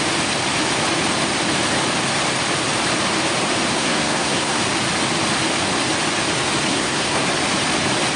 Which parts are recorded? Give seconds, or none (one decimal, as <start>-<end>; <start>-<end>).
0.0-3.7; 4.6-6.7; 7.3-8.2